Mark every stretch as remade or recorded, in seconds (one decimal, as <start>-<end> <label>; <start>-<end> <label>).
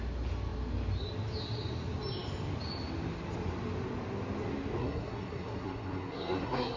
0.0-4.8 recorded; 4.8-6.8 remade